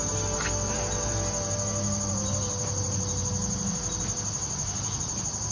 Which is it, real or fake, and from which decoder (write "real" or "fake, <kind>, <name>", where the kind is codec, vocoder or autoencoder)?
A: real